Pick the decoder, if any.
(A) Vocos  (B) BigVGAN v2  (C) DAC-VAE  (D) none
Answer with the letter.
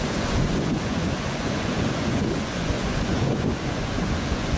A